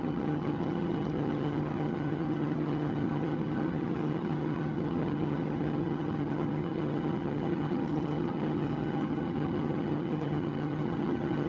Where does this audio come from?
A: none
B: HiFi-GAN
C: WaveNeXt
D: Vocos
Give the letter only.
B